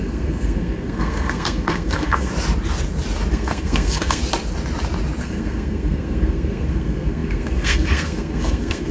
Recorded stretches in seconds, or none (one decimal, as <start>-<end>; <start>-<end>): 2.3-3.3; 4.2-5.2